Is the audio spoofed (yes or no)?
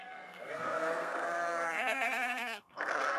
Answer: yes